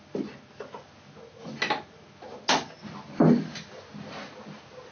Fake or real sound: real